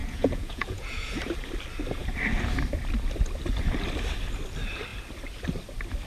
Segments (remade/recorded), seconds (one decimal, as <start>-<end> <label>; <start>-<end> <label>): 0.0-1.2 remade; 1.2-6.1 recorded